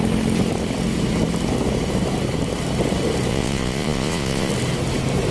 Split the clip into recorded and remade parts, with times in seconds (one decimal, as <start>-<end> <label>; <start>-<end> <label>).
0.0-3.3 recorded; 3.3-4.5 remade; 4.5-5.3 recorded